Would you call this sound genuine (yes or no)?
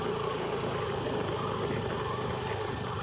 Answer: yes